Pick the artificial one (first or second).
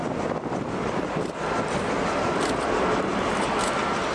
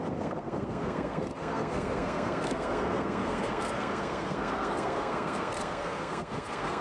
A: second